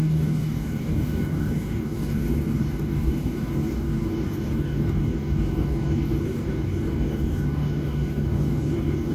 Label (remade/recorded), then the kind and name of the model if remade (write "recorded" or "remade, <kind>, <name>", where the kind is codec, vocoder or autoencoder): remade, codec, DAC